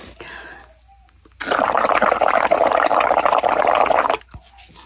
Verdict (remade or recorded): recorded